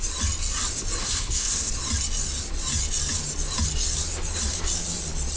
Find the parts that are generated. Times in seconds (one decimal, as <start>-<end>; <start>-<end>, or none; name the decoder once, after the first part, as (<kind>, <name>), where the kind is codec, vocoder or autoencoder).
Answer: 1.0-1.7 (codec, SNAC)